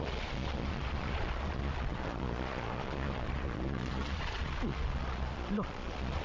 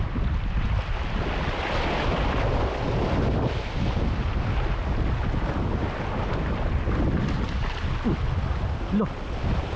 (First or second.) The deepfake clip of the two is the first